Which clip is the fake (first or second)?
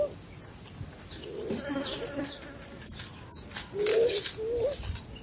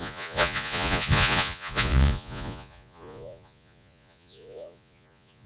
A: second